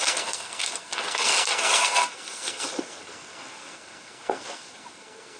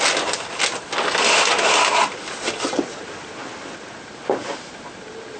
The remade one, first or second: first